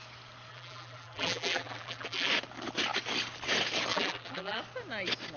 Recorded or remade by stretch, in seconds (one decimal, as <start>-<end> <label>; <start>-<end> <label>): 0.0-0.5 recorded; 0.5-2.3 remade; 2.3-3.9 recorded; 3.9-4.6 remade; 4.6-5.4 recorded